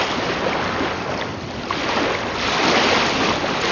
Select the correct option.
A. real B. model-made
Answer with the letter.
A